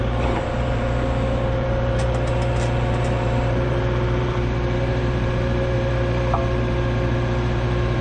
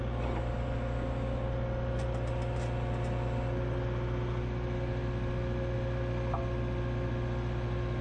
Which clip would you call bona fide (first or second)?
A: second